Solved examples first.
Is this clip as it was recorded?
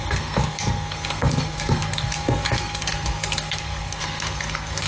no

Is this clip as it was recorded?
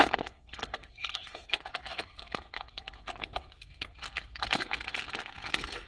no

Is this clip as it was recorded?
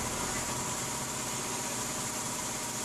yes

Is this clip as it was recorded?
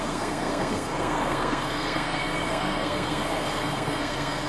no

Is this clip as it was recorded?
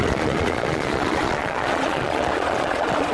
no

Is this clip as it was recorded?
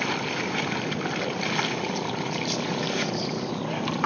yes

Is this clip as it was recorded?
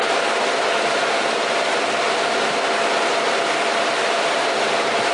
yes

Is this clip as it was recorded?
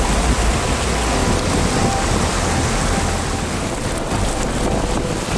yes